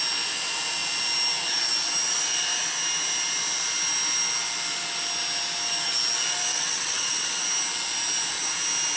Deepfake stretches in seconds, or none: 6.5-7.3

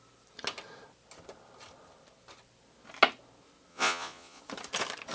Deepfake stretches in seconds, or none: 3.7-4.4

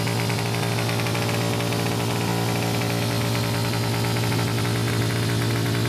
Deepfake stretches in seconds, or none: none